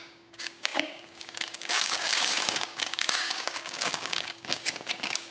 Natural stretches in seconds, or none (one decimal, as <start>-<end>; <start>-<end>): none